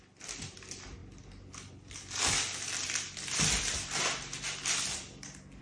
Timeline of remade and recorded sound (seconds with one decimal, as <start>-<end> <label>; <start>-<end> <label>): 0.0-5.6 recorded